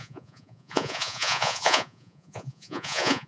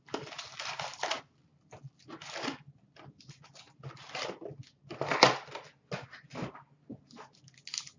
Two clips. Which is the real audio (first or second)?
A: second